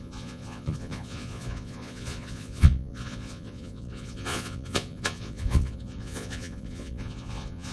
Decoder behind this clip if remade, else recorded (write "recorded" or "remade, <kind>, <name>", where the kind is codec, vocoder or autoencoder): remade, vocoder, Vocos